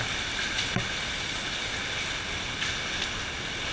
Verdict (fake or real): real